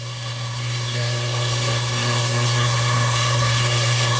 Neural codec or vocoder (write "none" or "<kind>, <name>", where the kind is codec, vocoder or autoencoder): codec, SNAC